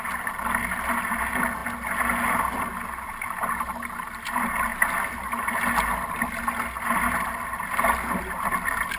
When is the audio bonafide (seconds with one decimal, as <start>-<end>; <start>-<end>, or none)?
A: 0.0-9.0